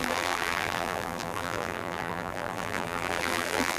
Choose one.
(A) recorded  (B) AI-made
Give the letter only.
B